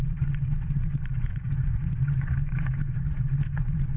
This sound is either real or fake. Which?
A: fake